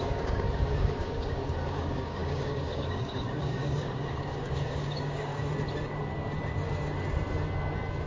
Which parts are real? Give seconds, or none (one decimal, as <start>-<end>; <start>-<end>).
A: 5.3-8.1